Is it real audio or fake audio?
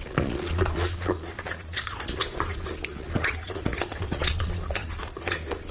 fake